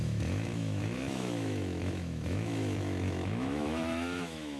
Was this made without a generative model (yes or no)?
no